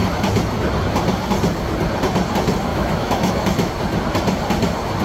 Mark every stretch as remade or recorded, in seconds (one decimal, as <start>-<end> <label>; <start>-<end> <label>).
0.0-2.7 recorded; 2.7-3.7 remade; 3.7-5.0 recorded